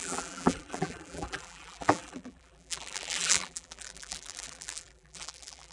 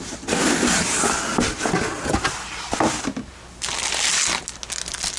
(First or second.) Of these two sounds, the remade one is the first